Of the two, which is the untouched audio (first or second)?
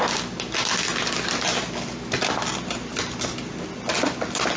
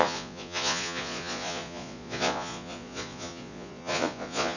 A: first